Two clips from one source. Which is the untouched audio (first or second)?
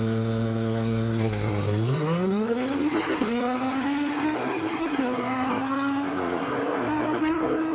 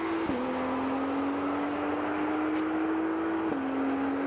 second